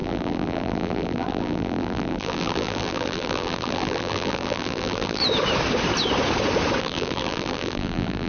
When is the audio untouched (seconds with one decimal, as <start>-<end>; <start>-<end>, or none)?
5.2-6.8